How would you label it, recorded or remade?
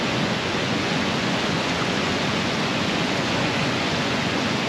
remade